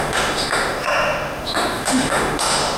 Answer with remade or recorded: remade